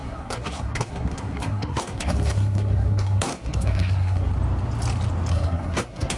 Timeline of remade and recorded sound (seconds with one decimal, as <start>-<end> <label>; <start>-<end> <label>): 0.0-4.3 remade; 4.3-5.3 recorded; 5.3-6.2 remade

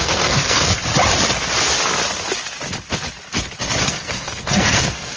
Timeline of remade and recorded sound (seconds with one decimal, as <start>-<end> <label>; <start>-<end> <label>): 0.0-0.8 remade; 0.8-3.9 recorded; 3.9-5.2 remade

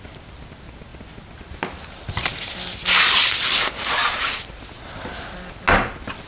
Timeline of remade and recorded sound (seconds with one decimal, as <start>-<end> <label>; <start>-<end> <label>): 0.0-4.0 recorded; 4.0-4.6 remade; 4.6-6.3 recorded

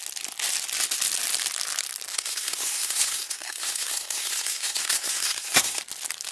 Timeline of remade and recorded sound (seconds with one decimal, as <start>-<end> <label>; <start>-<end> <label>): 0.0-2.1 recorded; 2.1-5.8 remade; 5.8-6.3 recorded

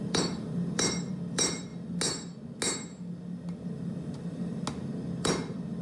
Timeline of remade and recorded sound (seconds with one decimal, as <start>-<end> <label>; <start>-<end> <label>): 0.0-1.7 remade; 1.7-5.2 recorded; 5.2-5.8 remade

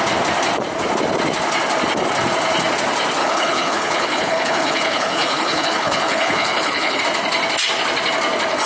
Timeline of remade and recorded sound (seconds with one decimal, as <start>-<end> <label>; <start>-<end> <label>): 0.0-3.2 recorded; 3.2-7.0 remade; 7.0-8.7 recorded

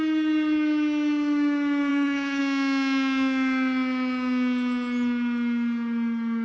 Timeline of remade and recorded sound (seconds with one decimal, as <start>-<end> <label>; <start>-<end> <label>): 0.0-1.9 recorded; 1.9-2.4 remade; 2.4-6.4 recorded

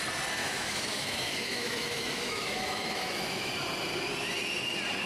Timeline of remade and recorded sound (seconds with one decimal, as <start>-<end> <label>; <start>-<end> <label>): 0.0-0.4 recorded; 0.4-3.5 remade; 3.5-5.1 recorded